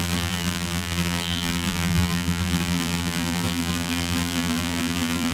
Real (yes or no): no